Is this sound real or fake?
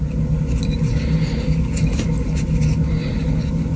real